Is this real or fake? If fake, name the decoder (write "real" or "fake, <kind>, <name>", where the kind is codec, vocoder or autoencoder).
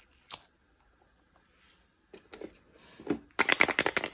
real